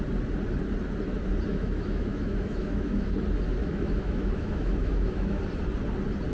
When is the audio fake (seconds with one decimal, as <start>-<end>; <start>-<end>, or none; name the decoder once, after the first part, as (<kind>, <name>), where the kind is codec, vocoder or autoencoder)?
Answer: 1.5-3.1 (autoencoder, DAC-VAE); 3.6-5.4